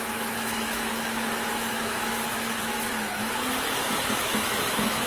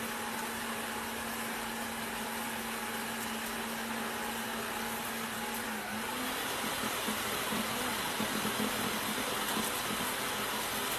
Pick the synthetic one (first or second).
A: first